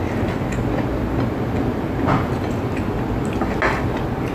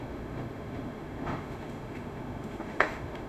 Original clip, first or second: first